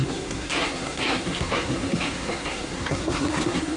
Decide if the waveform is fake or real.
fake